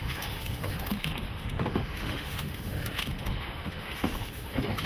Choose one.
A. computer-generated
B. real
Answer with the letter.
A